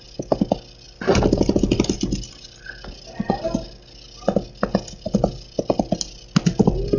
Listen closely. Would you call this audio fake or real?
real